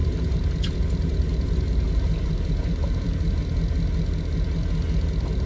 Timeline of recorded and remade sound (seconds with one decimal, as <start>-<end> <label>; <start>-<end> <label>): 0.0-3.3 remade; 3.3-5.5 recorded

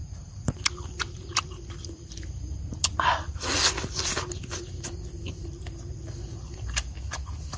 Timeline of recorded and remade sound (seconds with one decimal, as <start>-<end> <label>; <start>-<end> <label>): 0.0-0.5 remade; 0.5-7.6 recorded

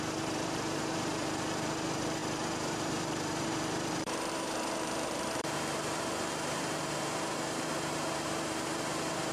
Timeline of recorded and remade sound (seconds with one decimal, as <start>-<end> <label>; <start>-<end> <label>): 0.0-9.3 remade